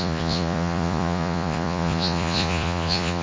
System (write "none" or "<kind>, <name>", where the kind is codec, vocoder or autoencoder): vocoder, Vocos